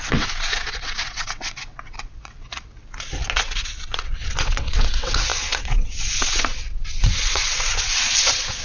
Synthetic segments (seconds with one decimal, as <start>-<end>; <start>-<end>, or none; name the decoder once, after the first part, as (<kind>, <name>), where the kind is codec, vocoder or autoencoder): 0.0-2.8 (vocoder, WaveNeXt); 3.4-8.6